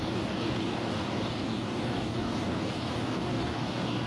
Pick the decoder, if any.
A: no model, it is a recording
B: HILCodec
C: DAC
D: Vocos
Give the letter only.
C